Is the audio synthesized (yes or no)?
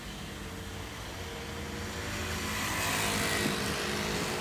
no